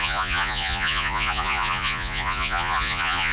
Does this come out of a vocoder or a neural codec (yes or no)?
yes